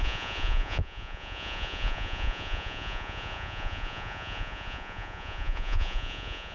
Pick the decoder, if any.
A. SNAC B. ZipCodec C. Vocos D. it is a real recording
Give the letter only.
C